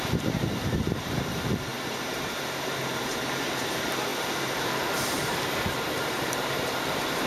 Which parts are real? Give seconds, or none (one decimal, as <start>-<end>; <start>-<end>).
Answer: none